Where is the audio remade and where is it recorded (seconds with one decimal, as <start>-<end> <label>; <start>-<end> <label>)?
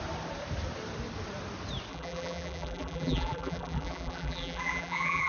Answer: 0.0-1.9 recorded; 1.9-5.3 remade